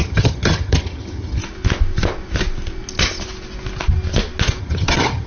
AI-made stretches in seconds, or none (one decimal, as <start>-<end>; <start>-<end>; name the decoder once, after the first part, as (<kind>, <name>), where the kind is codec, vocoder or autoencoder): 0.0-1.4 (vocoder, HiFi-GAN); 4.6-5.3